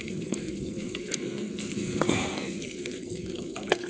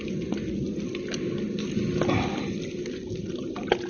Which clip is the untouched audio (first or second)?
second